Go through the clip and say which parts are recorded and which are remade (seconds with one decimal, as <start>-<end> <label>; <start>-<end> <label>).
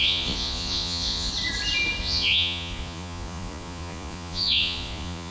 0.0-1.3 remade; 1.3-2.0 recorded; 2.0-5.3 remade